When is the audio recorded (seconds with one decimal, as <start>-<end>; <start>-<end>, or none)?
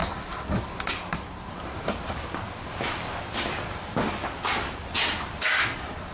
0.0-6.1